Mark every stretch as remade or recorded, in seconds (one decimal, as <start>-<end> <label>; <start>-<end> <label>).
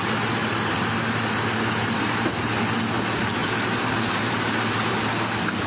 0.0-3.4 recorded; 3.4-5.0 remade; 5.0-5.7 recorded